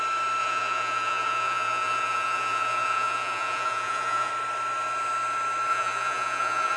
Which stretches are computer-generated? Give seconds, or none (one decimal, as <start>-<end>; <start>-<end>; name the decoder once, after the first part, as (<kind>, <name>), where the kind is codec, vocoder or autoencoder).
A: 0.4-4.3 (vocoder, Vocos); 5.7-6.8

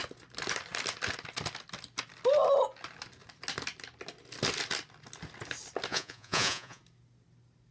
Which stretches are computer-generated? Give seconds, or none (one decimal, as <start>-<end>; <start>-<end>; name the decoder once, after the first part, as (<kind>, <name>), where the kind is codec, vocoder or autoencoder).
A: 5.9-6.8 (vocoder, Vocos)

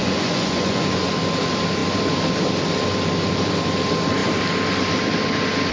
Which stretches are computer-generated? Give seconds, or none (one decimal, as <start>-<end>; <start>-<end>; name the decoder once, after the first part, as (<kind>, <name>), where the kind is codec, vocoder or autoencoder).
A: 0.0-1.1 (vocoder, Vocos)